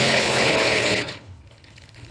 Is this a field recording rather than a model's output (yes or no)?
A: no